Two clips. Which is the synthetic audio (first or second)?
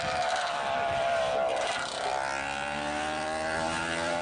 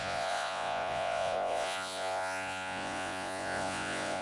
second